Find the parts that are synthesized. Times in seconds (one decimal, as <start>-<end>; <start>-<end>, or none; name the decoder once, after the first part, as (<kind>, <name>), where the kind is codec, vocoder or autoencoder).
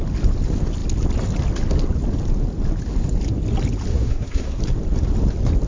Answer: 3.9-4.6 (codec, SNAC)